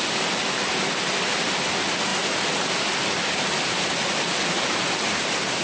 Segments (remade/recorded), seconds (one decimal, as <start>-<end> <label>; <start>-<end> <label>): 0.0-5.6 recorded